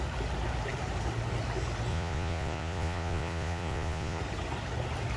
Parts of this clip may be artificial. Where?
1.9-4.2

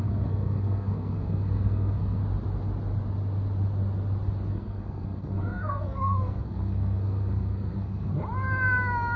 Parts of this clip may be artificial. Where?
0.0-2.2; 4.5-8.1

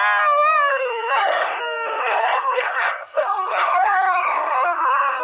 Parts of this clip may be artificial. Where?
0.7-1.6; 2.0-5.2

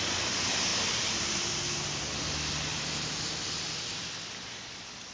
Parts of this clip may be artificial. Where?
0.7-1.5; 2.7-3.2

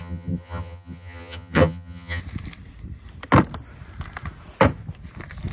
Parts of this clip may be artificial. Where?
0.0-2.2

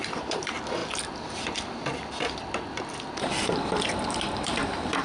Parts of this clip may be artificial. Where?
0.0-0.8; 3.2-5.0

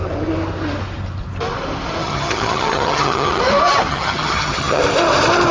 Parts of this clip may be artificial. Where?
2.0-3.4; 3.9-4.8